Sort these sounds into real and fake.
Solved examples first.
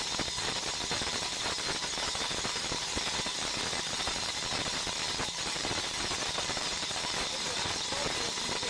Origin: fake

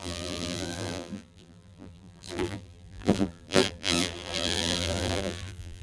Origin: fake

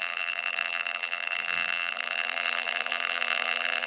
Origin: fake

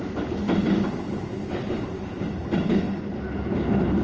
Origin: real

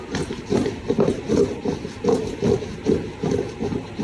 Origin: real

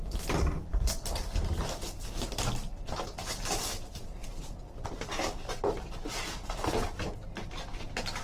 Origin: real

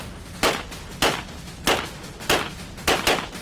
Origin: real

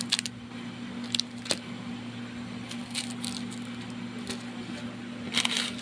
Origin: real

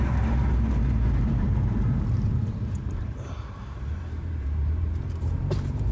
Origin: fake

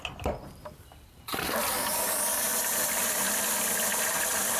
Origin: real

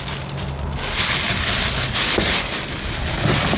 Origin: real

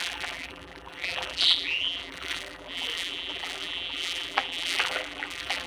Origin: fake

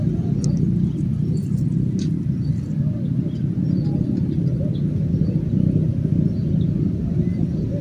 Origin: real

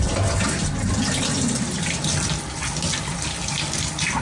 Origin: real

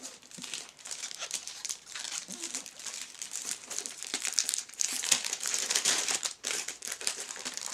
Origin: fake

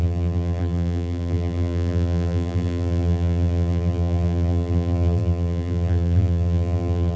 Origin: fake